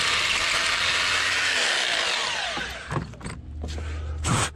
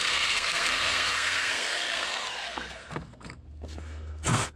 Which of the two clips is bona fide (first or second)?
first